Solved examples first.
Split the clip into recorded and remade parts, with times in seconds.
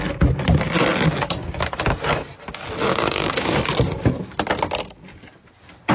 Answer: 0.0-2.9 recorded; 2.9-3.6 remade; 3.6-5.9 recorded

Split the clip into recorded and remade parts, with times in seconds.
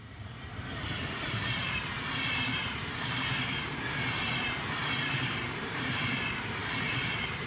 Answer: 0.0-7.5 remade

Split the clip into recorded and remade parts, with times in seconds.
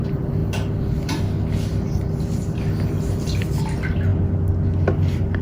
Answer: 0.0-5.4 recorded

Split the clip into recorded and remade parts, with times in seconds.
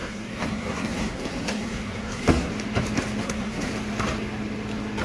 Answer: 0.0-2.5 remade; 2.5-3.2 recorded; 3.2-3.7 remade; 3.7-5.0 recorded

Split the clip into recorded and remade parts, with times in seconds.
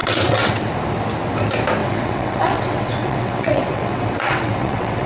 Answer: 0.0-0.7 remade; 0.7-1.8 recorded; 1.8-5.1 remade